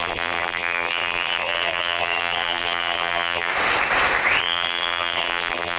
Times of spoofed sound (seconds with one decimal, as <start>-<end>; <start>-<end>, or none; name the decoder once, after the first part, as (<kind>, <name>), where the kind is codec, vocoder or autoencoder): 0.0-3.5 (vocoder, BigVGAN v2); 4.4-5.8